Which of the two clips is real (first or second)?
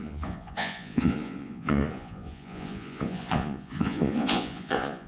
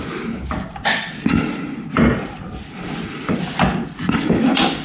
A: second